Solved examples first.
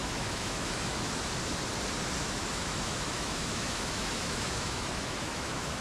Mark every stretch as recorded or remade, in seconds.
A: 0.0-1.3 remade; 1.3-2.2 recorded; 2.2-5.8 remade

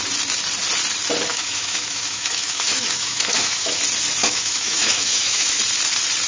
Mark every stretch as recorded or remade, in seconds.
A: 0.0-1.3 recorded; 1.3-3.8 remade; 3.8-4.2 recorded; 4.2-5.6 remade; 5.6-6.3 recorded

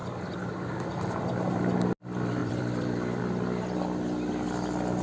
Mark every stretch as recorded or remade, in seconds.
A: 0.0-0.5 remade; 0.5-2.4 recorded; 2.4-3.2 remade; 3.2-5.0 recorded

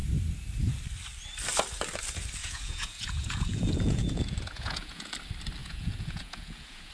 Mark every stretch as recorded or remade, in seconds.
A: 0.0-2.4 recorded; 2.4-5.1 remade; 5.1-5.6 recorded; 5.6-6.9 remade

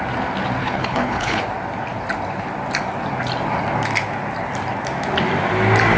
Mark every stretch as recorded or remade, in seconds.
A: 0.0-0.6 recorded; 0.6-1.4 remade; 1.4-6.0 recorded

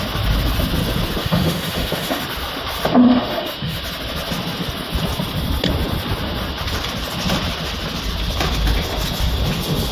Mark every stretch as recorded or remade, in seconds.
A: 0.0-1.2 recorded; 1.2-2.2 remade; 2.2-3.0 recorded; 3.0-3.8 remade; 3.8-9.9 recorded

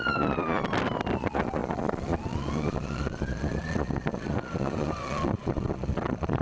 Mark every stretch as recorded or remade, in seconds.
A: 0.0-0.7 remade; 0.7-1.2 recorded; 1.2-6.4 remade